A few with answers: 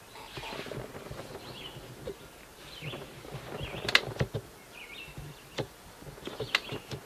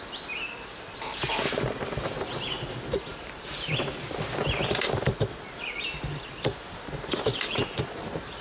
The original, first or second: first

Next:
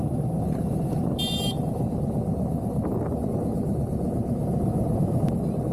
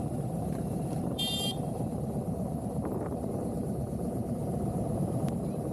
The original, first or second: first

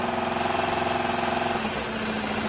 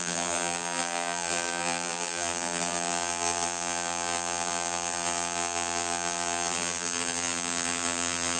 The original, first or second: first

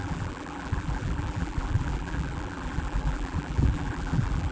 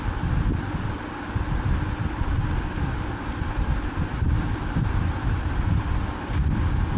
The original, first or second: second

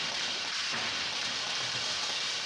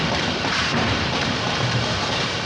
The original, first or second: first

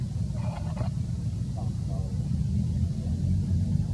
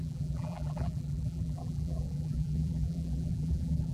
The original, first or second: first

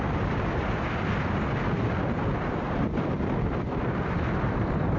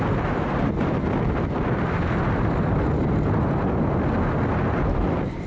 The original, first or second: second